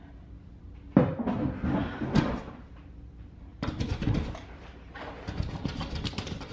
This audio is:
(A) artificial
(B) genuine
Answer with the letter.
B